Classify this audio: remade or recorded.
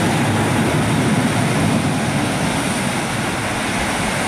recorded